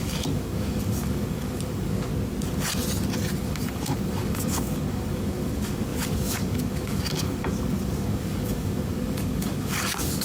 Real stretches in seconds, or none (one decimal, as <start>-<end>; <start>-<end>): 2.1-3.4